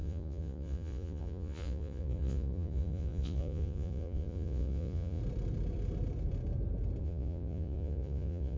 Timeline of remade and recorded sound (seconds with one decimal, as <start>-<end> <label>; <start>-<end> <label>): 0.0-5.2 remade; 5.2-7.0 recorded; 7.0-8.6 remade